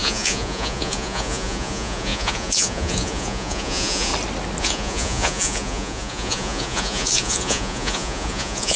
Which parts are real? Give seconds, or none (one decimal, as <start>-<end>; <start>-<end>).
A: 4.1-4.6